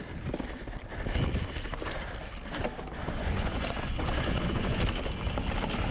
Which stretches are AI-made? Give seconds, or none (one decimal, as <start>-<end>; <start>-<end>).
3.0-4.8